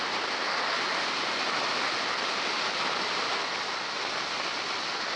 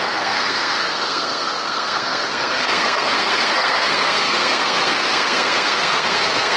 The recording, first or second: first